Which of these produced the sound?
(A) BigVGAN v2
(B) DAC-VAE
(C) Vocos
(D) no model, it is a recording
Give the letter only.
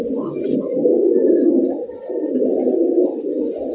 D